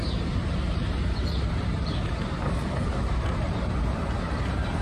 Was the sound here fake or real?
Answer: fake